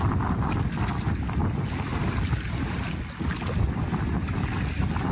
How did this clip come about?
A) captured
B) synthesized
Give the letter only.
A